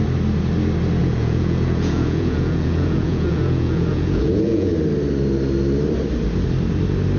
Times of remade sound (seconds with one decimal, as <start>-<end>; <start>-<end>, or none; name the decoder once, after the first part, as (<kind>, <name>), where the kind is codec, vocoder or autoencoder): 1.0-4.7 (vocoder, Vocos)